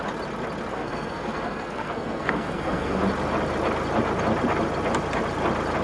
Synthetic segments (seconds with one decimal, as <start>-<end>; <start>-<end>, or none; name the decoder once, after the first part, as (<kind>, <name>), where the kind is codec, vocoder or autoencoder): 0.7-3.0 (codec, SNAC)